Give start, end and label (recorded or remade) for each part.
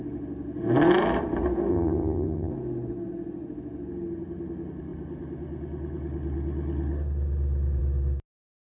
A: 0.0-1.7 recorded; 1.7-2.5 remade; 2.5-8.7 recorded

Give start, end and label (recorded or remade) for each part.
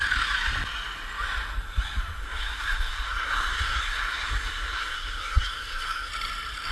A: 0.0-2.2 recorded; 2.2-6.1 remade; 6.1-6.7 recorded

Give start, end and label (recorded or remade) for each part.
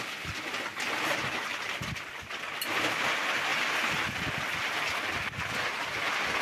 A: 0.0-1.5 recorded; 1.5-2.8 remade; 2.8-6.4 recorded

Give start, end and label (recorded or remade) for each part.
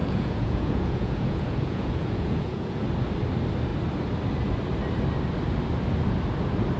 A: 0.0-2.8 remade; 2.8-6.8 recorded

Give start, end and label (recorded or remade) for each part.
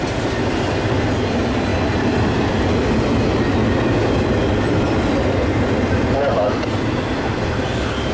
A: 0.0-8.1 recorded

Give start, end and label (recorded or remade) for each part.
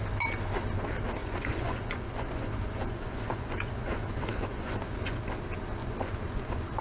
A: 0.0-1.2 recorded; 1.2-5.2 remade; 5.2-5.8 recorded; 5.8-6.8 remade